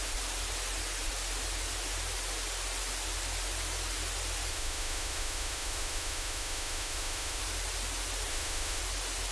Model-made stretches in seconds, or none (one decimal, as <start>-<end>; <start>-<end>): 4.5-7.4; 8.3-8.8